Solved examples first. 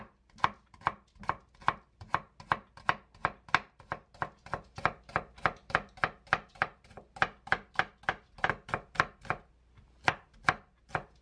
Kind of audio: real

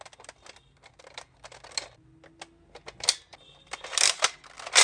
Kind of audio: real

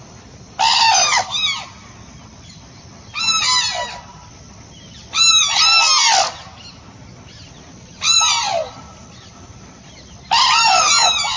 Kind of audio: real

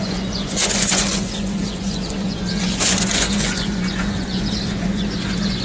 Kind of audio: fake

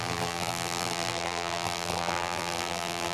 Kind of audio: fake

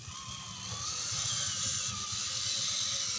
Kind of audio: real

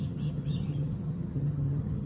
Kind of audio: fake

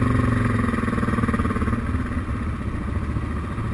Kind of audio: real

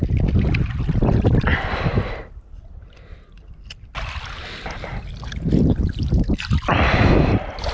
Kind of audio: real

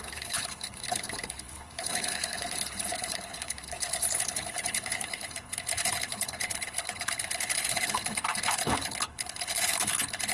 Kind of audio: fake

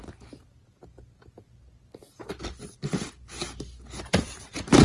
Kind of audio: real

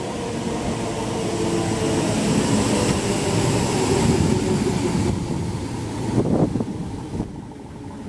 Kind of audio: real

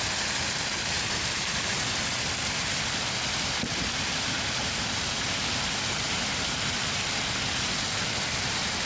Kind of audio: real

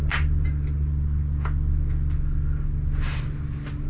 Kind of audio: real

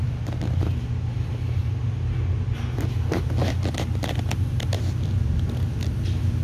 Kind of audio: real